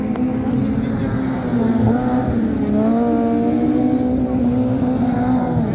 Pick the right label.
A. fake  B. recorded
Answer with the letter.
B